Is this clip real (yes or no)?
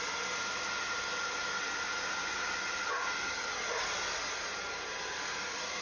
yes